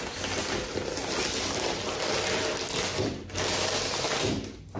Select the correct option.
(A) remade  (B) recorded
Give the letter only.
B